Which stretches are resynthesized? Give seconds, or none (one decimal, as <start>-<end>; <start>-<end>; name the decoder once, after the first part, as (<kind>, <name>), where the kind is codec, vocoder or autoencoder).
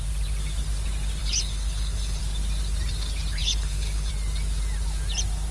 1.2-2.2 (codec, HILCodec); 3.4-4.1